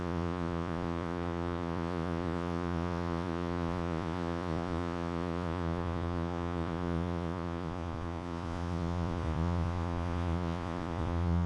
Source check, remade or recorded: remade